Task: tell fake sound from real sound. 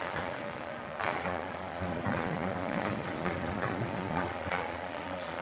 fake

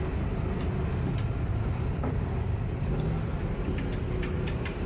real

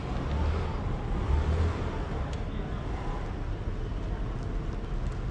real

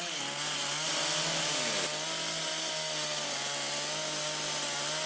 real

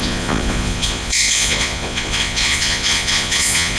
fake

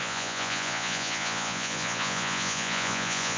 fake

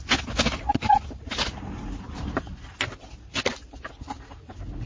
real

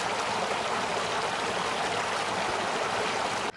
real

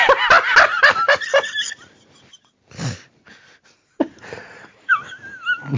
real